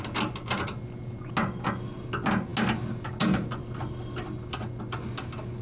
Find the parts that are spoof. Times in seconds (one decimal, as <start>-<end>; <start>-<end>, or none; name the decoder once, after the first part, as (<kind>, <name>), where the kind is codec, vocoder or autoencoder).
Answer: none

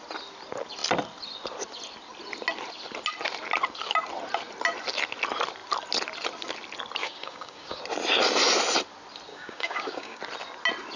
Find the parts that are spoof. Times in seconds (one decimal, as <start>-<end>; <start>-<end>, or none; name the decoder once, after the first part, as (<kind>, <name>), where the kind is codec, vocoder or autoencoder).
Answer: 7.0-7.8 (codec, DAC); 9.3-10.2

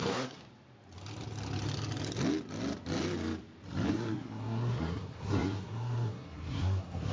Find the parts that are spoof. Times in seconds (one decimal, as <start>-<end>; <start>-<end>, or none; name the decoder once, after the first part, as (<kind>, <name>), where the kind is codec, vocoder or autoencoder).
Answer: 0.0-0.4 (codec, SNAC); 3.9-7.1

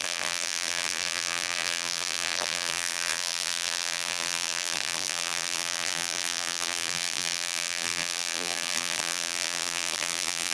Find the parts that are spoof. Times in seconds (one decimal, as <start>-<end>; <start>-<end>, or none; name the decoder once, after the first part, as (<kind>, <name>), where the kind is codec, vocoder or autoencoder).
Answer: 0.0-10.5 (vocoder, BigVGAN v2)

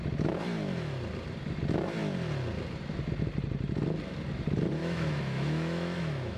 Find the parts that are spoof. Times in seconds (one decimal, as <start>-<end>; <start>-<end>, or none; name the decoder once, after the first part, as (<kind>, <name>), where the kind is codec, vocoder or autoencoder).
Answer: 4.8-6.4 (autoencoder, DAC-VAE)

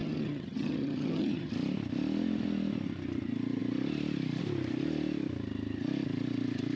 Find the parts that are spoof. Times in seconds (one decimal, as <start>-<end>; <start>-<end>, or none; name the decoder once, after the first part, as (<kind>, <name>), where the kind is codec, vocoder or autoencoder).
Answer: 0.0-1.5 (vocoder, HiFi-GAN)

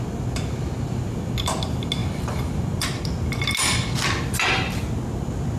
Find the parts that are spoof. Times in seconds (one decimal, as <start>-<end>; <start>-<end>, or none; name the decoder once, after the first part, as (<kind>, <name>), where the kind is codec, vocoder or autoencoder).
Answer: none